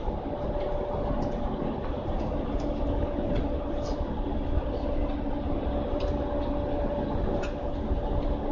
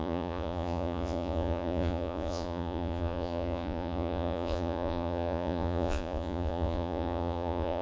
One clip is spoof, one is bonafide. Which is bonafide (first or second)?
first